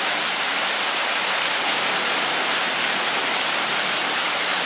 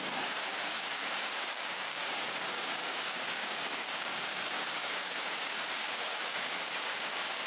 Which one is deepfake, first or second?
second